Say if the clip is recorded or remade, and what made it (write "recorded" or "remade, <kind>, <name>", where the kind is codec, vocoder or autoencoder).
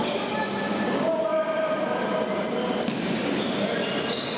recorded